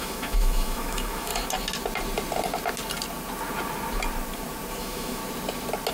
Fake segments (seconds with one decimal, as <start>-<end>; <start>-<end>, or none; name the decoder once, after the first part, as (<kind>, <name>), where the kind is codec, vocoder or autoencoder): 0.0-1.3 (autoencoder, DAC-VAE); 4.8-5.2